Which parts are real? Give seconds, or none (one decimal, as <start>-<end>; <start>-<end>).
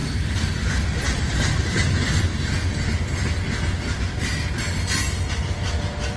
2.3-5.3